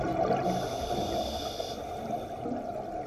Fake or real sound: real